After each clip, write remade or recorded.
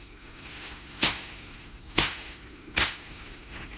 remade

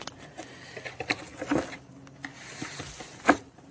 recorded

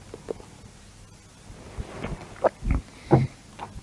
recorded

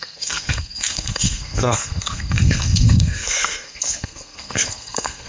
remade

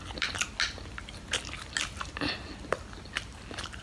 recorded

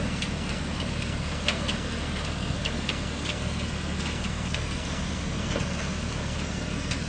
remade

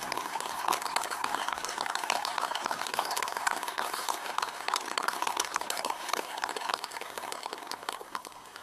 remade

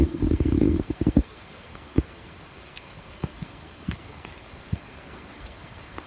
remade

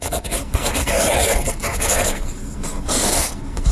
remade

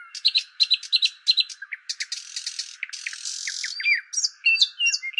recorded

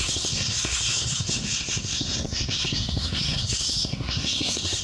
remade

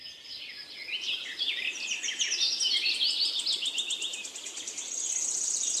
recorded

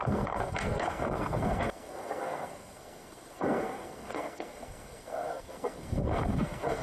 remade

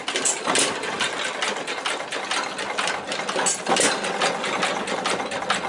recorded